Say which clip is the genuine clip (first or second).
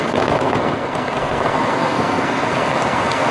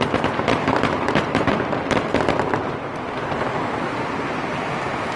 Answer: second